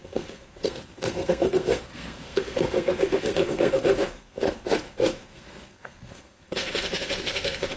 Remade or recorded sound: remade